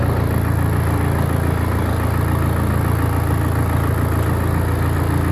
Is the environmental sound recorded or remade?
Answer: recorded